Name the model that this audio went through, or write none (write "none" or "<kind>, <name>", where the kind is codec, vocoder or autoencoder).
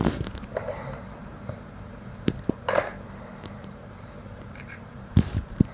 vocoder, BigVGAN v2